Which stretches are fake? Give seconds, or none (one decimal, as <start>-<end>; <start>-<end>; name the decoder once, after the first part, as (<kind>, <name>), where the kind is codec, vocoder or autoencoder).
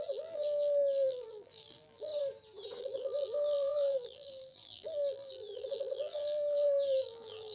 0.0-2.1 (vocoder, BigVGAN v2); 2.8-7.5